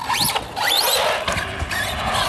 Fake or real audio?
real